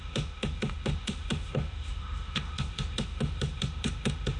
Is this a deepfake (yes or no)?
yes